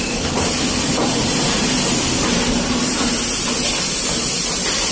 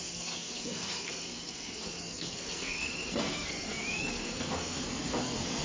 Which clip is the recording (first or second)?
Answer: first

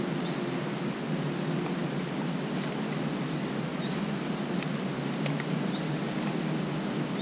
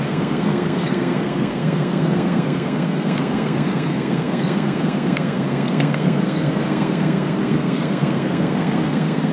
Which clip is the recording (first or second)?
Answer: first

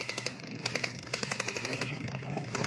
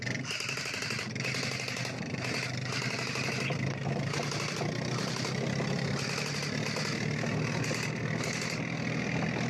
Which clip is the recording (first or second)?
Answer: second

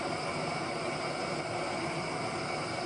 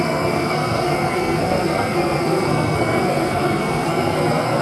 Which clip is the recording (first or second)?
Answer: first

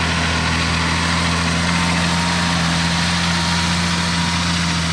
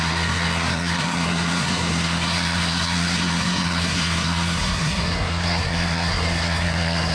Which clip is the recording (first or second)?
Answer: first